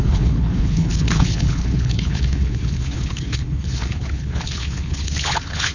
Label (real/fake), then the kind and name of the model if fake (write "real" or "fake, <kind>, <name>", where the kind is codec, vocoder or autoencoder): fake, codec, HILCodec